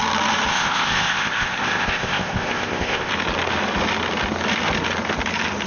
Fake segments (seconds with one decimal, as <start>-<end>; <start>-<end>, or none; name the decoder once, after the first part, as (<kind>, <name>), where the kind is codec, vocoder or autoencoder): 0.5-3.1 (codec, ZipCodec)